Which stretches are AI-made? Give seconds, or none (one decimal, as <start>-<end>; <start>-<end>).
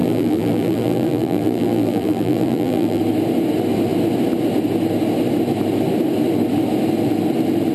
0.0-3.0